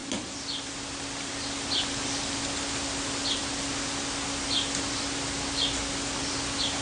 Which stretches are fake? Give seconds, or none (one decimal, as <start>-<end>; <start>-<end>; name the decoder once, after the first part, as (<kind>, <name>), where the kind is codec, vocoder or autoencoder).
none